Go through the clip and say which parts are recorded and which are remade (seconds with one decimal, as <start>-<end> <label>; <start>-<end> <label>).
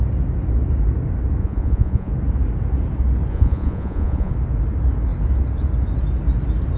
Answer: 0.0-1.4 recorded; 1.4-2.1 remade; 2.1-3.3 recorded; 3.3-4.3 remade; 4.3-6.8 recorded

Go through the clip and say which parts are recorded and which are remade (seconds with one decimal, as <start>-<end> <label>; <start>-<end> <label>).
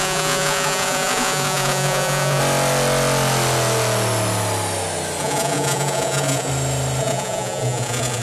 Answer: 0.0-2.4 remade; 2.4-5.2 recorded; 5.2-6.5 remade; 6.5-7.0 recorded; 7.0-8.2 remade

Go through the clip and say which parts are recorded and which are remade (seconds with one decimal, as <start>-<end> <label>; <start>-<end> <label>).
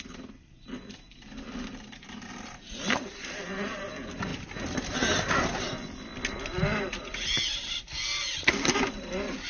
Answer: 0.0-9.5 recorded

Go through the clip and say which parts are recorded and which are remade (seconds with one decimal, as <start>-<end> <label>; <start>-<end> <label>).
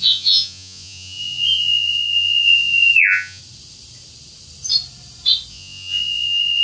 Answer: 0.0-3.4 remade; 3.4-5.5 recorded; 5.5-6.6 remade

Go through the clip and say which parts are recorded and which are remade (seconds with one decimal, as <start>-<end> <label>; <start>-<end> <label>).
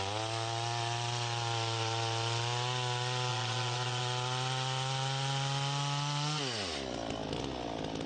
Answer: 0.0-3.3 recorded; 3.3-4.0 remade; 4.0-8.1 recorded